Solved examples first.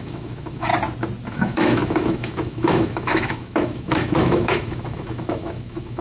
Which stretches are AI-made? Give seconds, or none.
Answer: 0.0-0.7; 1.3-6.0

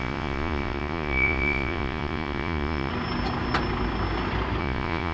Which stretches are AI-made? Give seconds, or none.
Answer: 0.0-2.9; 4.6-5.1

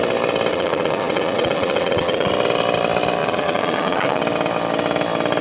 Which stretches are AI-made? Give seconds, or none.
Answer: 0.5-2.3; 3.2-4.2

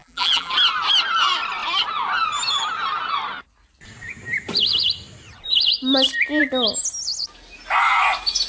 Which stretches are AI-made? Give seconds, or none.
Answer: 0.0-0.5

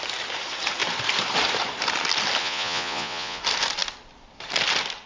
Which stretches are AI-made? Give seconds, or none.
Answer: 2.4-3.4

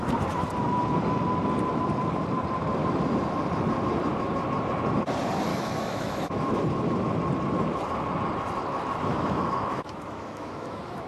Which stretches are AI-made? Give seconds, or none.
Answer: 5.5-6.6; 9.1-11.1